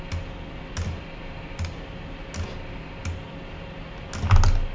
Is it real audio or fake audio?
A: real